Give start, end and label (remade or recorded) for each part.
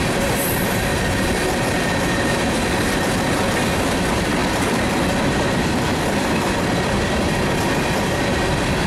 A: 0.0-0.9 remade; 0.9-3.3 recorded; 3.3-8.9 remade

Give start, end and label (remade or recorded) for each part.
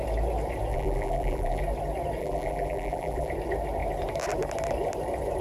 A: 0.0-0.7 recorded; 0.7-1.6 remade; 1.6-2.2 recorded; 2.2-3.3 remade; 3.3-5.4 recorded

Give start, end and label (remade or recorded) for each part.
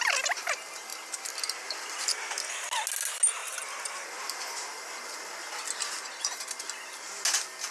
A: 0.0-7.7 recorded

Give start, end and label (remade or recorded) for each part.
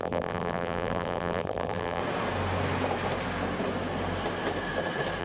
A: 0.0-2.0 remade; 2.0-5.2 recorded